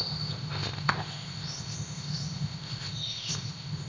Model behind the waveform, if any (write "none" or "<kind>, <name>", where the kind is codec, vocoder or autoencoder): codec, ZipCodec